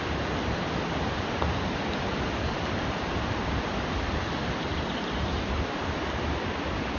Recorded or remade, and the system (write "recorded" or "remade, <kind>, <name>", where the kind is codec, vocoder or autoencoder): recorded